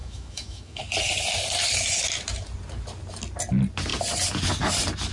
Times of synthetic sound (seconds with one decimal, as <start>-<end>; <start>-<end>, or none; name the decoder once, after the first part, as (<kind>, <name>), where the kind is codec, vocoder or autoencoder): 0.0-0.8 (autoencoder, DAC-VAE)